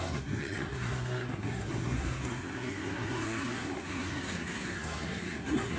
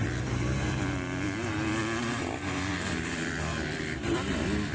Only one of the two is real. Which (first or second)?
second